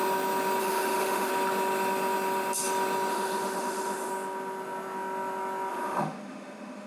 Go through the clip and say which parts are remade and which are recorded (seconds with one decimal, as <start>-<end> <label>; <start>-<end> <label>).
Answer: 0.0-0.6 recorded; 0.6-1.3 remade; 1.3-3.1 recorded; 3.1-4.1 remade; 4.1-5.7 recorded; 5.7-6.9 remade